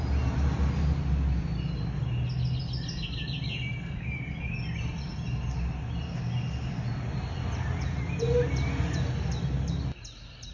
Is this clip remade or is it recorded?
recorded